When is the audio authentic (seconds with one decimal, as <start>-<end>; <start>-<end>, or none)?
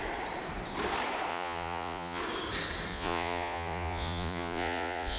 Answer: 0.0-1.3; 2.2-2.9